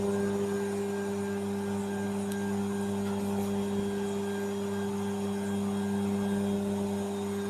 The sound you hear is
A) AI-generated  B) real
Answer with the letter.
B